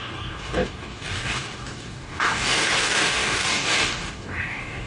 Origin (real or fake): fake